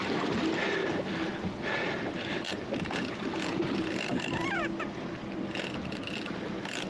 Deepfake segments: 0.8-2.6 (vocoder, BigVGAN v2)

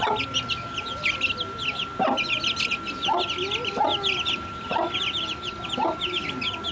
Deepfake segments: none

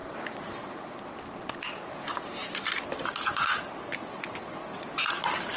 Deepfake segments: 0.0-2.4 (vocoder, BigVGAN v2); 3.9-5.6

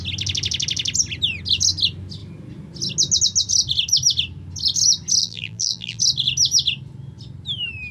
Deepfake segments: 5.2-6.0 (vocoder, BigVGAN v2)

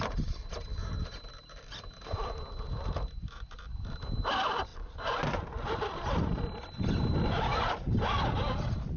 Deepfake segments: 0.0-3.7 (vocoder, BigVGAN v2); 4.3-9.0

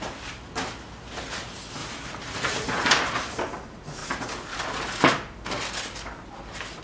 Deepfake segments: 1.8-2.9 (vocoder, BigVGAN v2)